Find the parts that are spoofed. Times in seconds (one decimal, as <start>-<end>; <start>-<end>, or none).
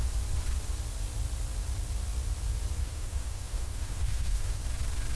2.8-4.6